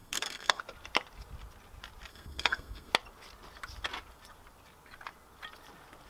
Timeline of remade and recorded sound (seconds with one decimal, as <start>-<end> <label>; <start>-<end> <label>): 0.0-0.6 remade; 0.6-2.1 recorded; 2.1-2.9 remade; 2.9-6.1 recorded